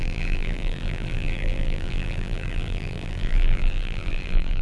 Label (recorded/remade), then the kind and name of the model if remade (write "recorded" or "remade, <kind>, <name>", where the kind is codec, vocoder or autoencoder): remade, vocoder, BigVGAN v2